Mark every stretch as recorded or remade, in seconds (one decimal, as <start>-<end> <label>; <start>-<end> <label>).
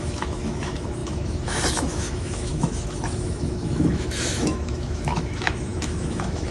0.0-6.5 remade